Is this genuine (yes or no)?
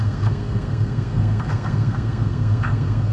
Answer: no